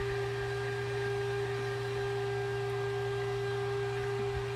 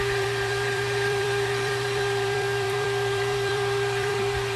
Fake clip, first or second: second